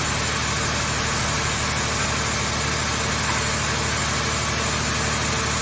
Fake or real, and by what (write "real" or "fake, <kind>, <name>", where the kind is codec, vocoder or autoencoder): real